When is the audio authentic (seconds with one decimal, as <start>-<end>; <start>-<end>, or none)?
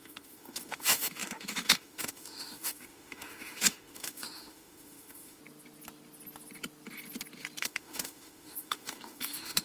5.4-7.6